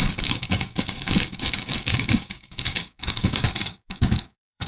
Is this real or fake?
fake